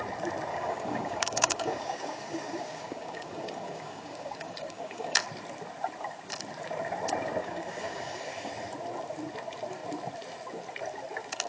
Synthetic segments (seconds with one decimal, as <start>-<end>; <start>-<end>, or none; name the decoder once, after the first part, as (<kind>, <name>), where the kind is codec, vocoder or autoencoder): 0.5-5.2 (codec, DAC); 7.4-8.5